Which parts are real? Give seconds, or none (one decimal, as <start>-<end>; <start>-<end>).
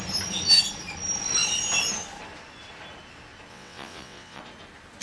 0.0-3.5; 4.4-5.0